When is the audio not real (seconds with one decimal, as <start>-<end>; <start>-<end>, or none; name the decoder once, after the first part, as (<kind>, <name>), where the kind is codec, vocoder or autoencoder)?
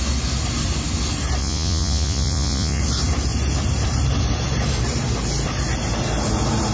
1.4-2.8 (vocoder, Vocos)